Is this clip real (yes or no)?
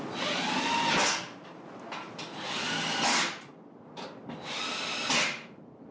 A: yes